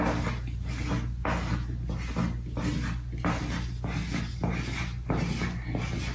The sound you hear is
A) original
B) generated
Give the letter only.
A